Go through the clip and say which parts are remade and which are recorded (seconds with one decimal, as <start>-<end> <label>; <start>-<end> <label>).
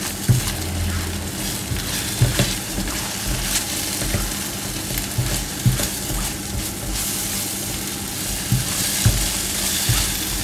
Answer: 0.0-2.3 recorded; 2.3-3.1 remade; 3.1-10.4 recorded